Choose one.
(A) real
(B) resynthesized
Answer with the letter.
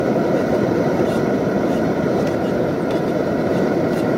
B